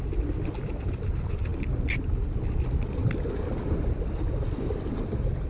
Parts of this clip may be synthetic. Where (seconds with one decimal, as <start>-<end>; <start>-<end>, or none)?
none